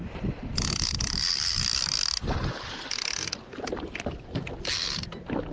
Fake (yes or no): no